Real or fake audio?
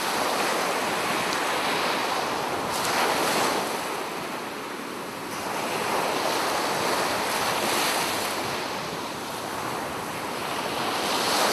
real